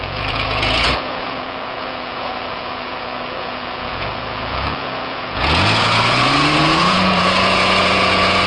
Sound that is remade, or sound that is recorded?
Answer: remade